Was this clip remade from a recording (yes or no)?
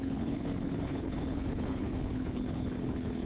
yes